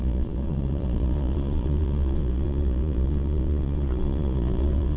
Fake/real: fake